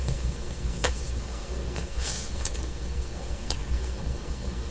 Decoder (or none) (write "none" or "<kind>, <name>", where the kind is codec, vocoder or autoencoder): codec, SNAC